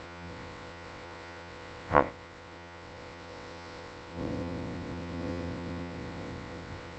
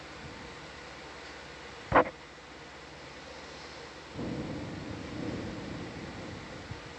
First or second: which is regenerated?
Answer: first